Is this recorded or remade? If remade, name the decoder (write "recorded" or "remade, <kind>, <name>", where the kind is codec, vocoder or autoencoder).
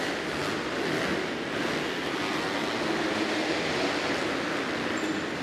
recorded